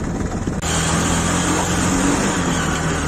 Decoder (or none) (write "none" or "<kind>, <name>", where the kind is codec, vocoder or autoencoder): none